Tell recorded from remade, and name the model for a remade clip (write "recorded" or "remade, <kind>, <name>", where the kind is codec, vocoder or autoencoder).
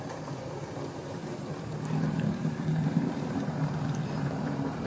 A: remade, vocoder, BigVGAN v2